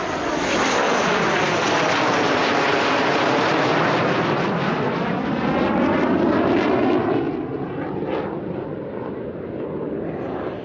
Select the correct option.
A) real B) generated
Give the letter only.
A